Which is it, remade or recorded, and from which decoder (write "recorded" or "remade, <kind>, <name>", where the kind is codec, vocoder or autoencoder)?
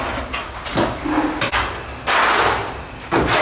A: recorded